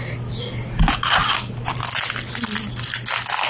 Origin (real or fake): real